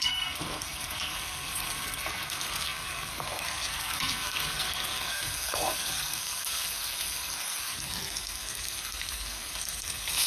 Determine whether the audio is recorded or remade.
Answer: remade